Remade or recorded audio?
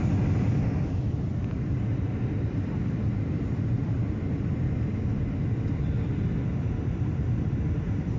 remade